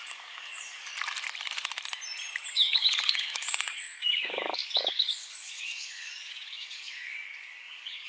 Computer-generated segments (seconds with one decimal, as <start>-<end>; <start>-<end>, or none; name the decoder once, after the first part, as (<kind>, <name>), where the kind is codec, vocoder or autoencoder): 0.0-0.9 (codec, DAC); 2.5-8.1